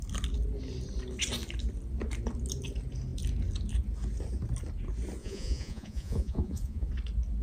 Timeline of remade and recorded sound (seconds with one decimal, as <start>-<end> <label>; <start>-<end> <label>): 0.0-5.2 recorded; 5.2-6.9 remade; 6.9-7.4 recorded

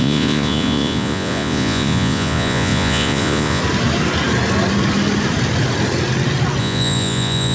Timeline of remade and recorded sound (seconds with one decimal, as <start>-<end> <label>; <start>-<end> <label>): 0.0-3.6 remade; 3.6-6.6 recorded; 6.6-7.5 remade

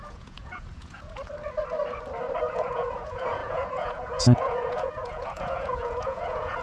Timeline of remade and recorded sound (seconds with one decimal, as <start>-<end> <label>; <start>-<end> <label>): 0.0-1.2 remade; 1.2-2.4 recorded; 2.4-6.6 remade

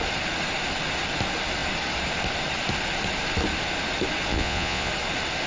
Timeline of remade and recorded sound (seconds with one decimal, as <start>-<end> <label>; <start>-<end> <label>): 0.0-4.3 recorded; 4.3-4.9 remade; 4.9-5.5 recorded

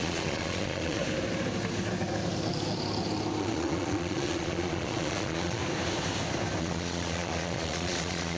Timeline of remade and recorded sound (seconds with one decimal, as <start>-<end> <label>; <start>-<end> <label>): 0.0-1.0 remade; 1.0-3.4 recorded; 3.4-5.6 remade; 5.6-6.6 recorded; 6.6-8.4 remade